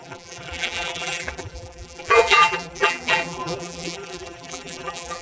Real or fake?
fake